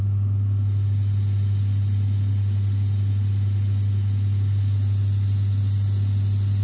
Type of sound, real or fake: real